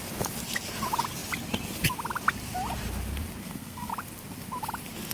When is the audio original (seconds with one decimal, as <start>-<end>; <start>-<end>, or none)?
0.0-3.4; 3.9-5.1